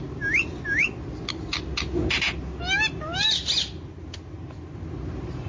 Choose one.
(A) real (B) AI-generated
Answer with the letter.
A